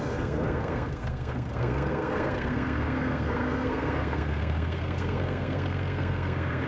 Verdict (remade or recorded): remade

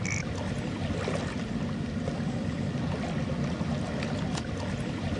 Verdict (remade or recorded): recorded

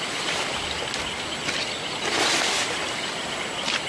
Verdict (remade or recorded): recorded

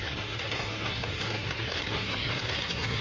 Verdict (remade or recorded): remade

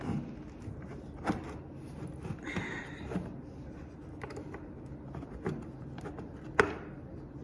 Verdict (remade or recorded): recorded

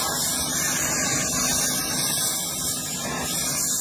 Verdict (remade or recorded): recorded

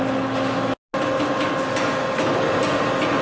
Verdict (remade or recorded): recorded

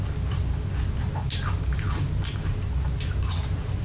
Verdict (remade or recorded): recorded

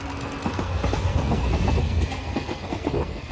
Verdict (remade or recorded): remade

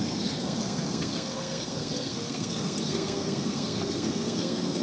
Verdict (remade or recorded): remade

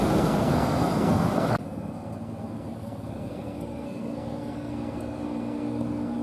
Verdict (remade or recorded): remade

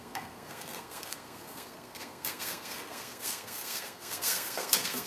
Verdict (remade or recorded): remade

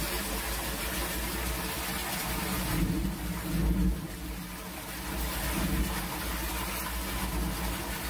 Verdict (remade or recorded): recorded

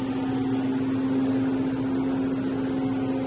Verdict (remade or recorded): recorded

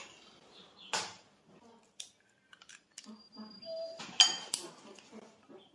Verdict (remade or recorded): recorded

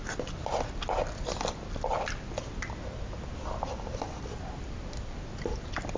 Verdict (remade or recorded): recorded